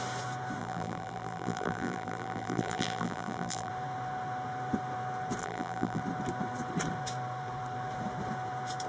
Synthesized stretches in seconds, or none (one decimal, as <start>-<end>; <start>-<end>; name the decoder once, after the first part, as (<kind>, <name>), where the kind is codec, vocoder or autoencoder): 0.6-3.7 (vocoder, BigVGAN v2); 5.4-6.0